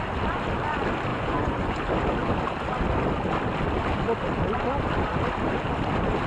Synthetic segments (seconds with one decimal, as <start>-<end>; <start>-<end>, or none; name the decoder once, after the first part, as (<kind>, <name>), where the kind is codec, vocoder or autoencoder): 1.1-1.8 (vocoder, Vocos)